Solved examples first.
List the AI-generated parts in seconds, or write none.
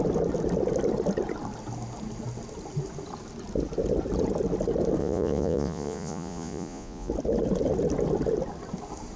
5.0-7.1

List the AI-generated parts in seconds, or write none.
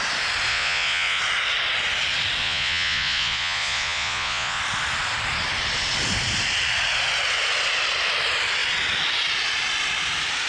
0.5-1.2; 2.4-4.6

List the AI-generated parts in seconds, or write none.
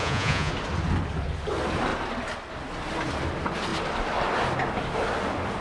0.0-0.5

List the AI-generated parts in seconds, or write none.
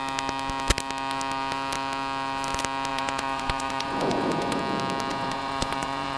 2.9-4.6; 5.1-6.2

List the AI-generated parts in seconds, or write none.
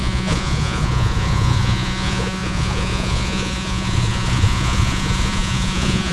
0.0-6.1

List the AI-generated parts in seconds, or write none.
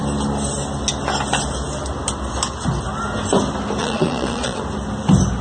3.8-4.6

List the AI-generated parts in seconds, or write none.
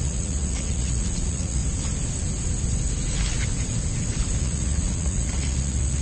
0.0-1.6; 4.4-6.0